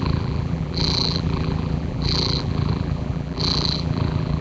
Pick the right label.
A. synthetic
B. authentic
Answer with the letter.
A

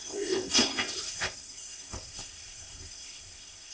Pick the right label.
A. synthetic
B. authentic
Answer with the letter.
A